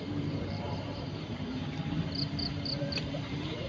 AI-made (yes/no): yes